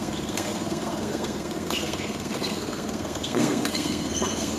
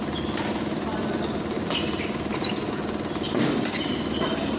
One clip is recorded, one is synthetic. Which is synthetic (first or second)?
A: first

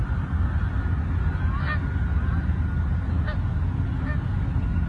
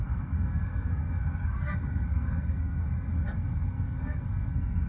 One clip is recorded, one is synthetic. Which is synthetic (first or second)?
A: second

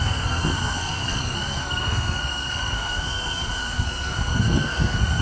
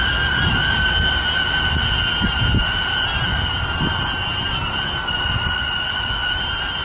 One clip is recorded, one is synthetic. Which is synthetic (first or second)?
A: first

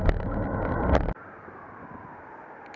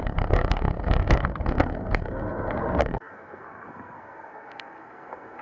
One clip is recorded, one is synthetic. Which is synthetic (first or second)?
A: second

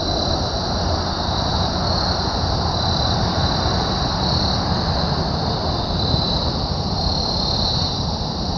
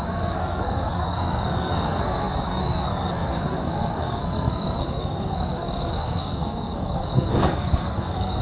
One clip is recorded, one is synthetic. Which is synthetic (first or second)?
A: second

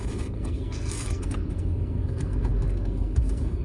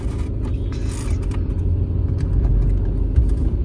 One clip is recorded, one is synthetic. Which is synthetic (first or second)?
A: first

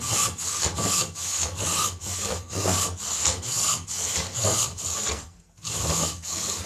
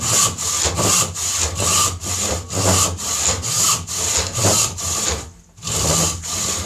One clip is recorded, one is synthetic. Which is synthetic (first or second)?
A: first